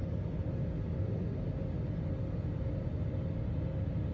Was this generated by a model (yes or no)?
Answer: no